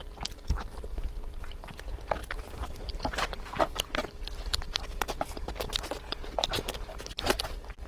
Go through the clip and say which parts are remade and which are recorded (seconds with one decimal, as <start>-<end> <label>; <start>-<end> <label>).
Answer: 0.0-2.2 recorded; 2.2-3.6 remade; 3.6-7.9 recorded

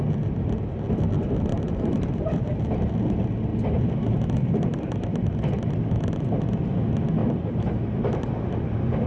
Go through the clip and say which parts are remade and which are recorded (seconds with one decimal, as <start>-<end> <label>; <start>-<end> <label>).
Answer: 0.0-1.5 recorded; 1.5-2.5 remade; 2.5-3.5 recorded; 3.5-6.4 remade; 6.4-7.2 recorded; 7.2-8.0 remade; 8.0-9.1 recorded

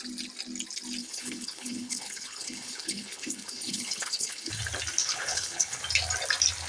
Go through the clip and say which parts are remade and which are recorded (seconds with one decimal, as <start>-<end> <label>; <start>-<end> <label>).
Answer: 0.0-1.0 recorded; 1.0-4.6 remade; 4.6-5.0 recorded; 5.0-5.8 remade; 5.8-6.7 recorded

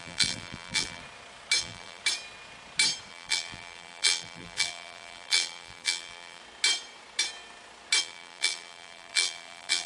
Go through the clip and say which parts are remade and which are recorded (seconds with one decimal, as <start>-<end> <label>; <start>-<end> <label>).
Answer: 0.0-1.0 remade; 1.0-1.6 recorded; 1.6-2.0 remade; 2.0-3.1 recorded; 3.1-6.4 remade; 6.4-8.0 recorded; 8.0-9.9 remade